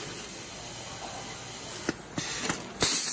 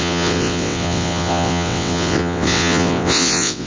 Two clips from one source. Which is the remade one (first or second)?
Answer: second